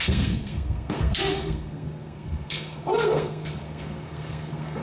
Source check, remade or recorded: remade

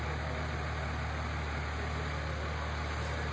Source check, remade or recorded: recorded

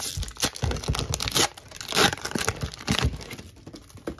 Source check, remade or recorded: recorded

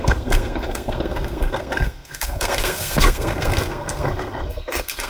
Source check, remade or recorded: remade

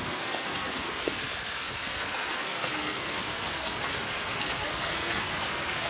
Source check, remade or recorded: remade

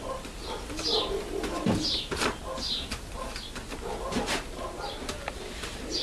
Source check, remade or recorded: recorded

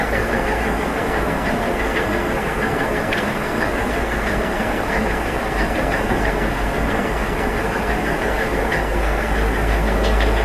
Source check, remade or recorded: remade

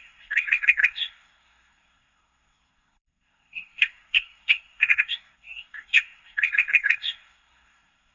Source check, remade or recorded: remade